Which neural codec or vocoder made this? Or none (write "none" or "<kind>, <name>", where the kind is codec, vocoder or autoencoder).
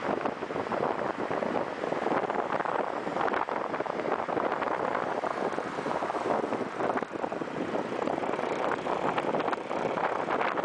none